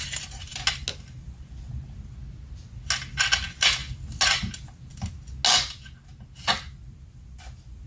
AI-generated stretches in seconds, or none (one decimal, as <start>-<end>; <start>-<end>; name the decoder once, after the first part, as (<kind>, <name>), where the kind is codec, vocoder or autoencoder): none

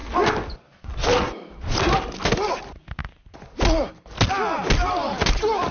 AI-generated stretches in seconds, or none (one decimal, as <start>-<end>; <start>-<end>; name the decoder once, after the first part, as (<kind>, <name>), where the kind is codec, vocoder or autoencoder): none

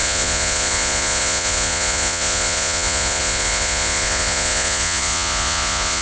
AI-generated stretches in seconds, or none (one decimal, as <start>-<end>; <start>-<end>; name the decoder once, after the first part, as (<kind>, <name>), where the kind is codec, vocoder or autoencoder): 0.0-6.0 (vocoder, Vocos)

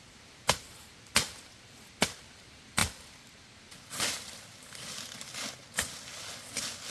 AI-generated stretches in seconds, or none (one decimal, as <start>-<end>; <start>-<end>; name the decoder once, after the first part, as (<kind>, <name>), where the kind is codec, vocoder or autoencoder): none

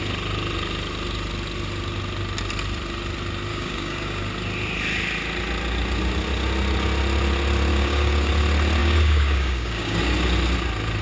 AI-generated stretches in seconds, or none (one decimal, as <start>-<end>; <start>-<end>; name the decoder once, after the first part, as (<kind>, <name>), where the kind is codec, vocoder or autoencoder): 3.5-4.2 (codec, DAC); 7.7-8.3; 8.8-10.0

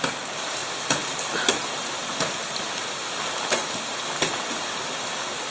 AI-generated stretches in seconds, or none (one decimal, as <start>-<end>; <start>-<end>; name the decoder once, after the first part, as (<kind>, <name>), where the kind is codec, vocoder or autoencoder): none

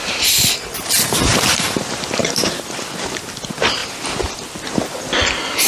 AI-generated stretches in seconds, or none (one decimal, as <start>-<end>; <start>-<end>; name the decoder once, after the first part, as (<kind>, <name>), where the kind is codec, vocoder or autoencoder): 1.3-2.6 (vocoder, BigVGAN v2)

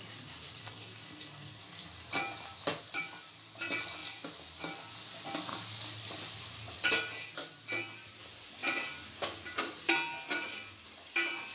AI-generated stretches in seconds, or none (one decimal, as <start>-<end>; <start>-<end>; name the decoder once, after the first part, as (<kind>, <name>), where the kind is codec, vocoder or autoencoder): 0.6-1.6 (codec, SNAC)